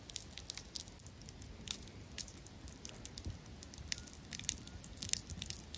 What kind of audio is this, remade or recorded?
recorded